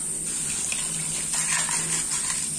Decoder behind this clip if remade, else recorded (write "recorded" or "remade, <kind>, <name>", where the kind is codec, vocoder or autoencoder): recorded